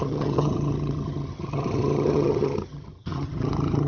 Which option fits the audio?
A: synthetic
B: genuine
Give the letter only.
A